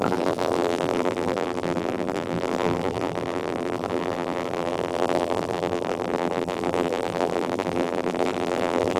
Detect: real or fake fake